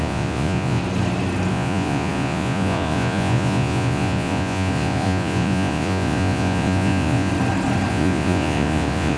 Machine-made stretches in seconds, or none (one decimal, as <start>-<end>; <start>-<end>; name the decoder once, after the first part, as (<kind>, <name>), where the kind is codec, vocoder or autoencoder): 0.0-0.8 (vocoder, Vocos); 1.5-7.3; 7.9-9.2